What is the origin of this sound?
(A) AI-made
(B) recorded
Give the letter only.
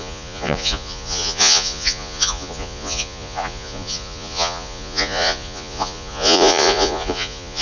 A